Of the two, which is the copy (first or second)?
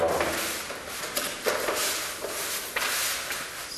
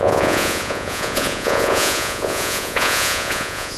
second